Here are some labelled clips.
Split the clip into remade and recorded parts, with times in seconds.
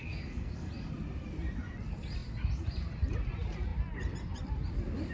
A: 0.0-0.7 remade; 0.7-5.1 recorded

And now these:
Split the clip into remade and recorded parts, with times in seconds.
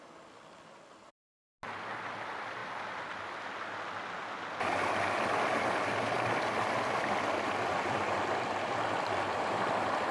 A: 0.0-10.1 recorded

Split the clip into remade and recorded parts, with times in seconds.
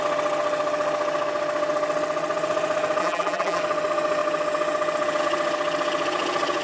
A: 0.0-3.0 recorded; 3.0-3.6 remade; 3.6-6.6 recorded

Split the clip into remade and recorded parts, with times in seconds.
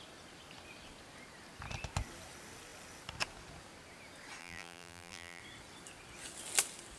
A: 0.0-4.4 recorded; 4.4-5.4 remade; 5.4-7.0 recorded